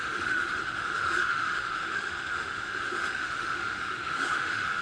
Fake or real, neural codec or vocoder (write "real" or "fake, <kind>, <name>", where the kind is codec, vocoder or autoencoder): fake, autoencoder, DAC-VAE